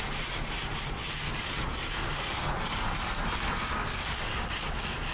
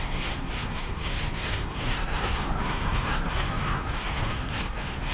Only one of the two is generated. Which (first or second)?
second